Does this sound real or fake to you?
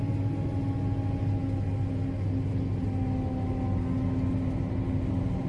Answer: real